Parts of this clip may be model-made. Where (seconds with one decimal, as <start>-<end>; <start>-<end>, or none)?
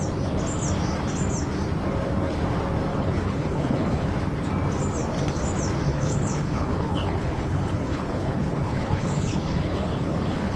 2.9-4.1; 5.9-10.6